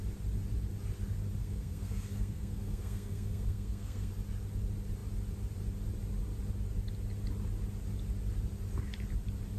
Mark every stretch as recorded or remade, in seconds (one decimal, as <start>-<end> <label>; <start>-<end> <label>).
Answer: 0.0-1.4 recorded; 1.4-4.1 remade; 4.1-9.6 recorded

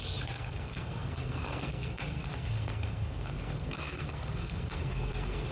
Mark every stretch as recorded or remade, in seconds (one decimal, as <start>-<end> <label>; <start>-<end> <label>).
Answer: 0.0-5.5 remade

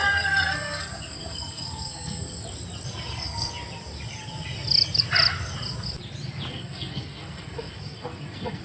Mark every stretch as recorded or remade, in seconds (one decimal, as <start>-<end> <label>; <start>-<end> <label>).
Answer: 0.0-2.4 remade; 2.4-3.1 recorded; 3.1-3.5 remade; 3.5-6.5 recorded; 6.5-8.6 remade

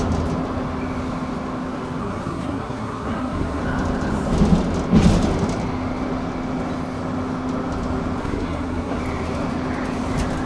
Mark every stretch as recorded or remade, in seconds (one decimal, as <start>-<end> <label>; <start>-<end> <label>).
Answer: 0.0-2.0 recorded; 2.0-3.6 remade; 3.6-8.2 recorded; 8.2-9.0 remade; 9.0-10.5 recorded

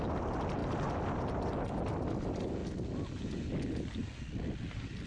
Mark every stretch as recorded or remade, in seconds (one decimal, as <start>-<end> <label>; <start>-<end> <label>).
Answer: 0.0-5.1 recorded

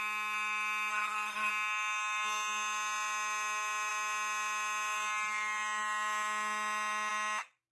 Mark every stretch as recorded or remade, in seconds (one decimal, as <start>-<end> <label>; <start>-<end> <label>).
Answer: 0.0-0.9 recorded; 0.9-1.5 remade; 1.5-7.7 recorded

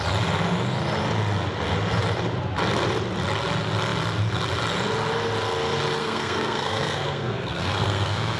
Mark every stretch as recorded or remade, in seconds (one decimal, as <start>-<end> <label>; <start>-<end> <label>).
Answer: 0.0-6.0 recorded; 6.0-8.4 remade

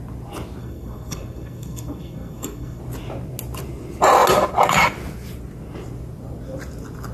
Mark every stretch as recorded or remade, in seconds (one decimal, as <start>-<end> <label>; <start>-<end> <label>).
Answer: 0.0-0.6 recorded; 0.6-2.8 remade; 2.8-7.1 recorded